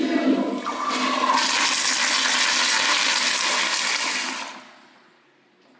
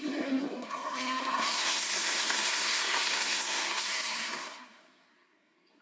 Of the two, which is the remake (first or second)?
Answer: second